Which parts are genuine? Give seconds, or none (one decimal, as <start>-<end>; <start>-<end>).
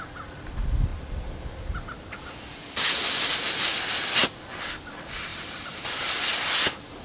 0.0-7.0